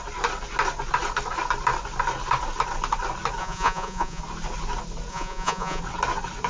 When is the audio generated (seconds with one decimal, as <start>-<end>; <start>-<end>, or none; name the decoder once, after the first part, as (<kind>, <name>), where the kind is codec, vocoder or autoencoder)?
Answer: 3.4-4.2 (vocoder, Vocos); 5.1-5.8